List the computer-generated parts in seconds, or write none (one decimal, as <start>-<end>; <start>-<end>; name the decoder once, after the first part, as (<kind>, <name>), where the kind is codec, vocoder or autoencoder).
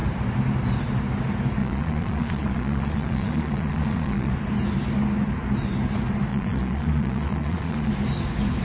1.6-4.3 (vocoder, Vocos); 6.3-7.9